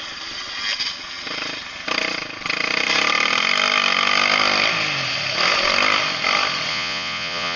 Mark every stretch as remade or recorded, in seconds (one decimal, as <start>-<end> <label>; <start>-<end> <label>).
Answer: 0.0-6.7 recorded; 6.7-7.6 remade